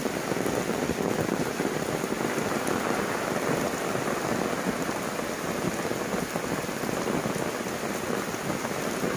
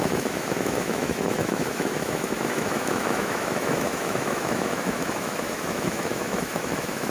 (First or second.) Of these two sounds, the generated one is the second